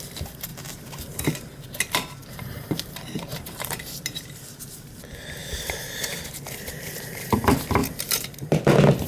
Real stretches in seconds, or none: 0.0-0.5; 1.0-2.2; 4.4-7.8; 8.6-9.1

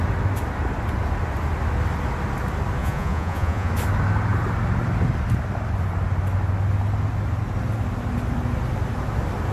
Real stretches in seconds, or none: 0.0-2.8; 3.7-9.5

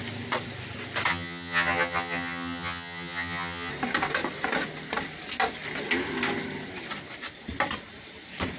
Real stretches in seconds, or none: 0.0-1.1; 3.7-8.6

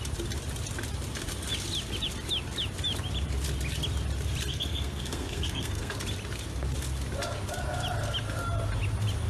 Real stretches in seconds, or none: 0.0-4.5; 5.9-9.3

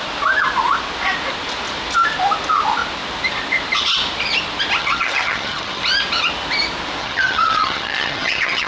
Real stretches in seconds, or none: 0.0-4.8; 5.8-7.0

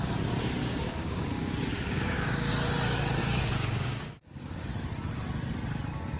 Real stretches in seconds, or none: 0.0-0.6; 1.2-1.7; 2.5-3.2; 4.7-6.2

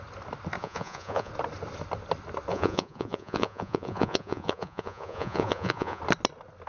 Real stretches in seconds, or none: 0.0-0.6; 1.3-2.5; 6.0-6.7